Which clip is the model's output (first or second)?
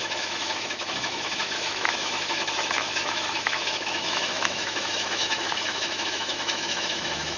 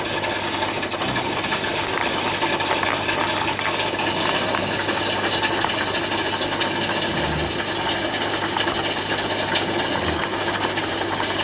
first